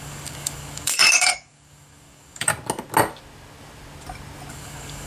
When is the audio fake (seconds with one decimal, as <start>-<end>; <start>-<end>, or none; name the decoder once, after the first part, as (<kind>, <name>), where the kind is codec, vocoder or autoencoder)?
0.0-2.5 (codec, DAC); 4.5-5.1